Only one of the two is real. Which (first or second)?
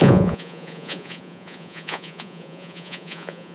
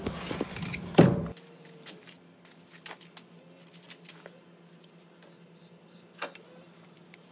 second